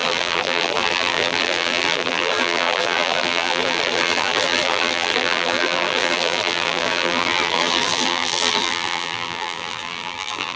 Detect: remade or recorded remade